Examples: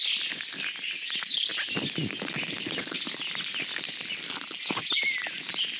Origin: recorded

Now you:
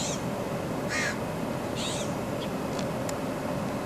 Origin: recorded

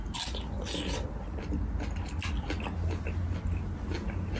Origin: recorded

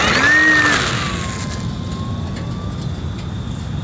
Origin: recorded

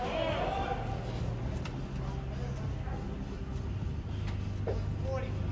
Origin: recorded